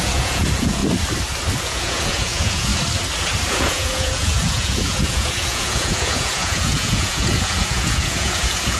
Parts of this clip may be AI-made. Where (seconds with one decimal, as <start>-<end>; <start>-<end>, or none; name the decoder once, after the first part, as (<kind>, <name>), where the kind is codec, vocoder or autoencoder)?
0.0-0.8 (vocoder, Vocos); 1.6-2.7; 3.5-8.8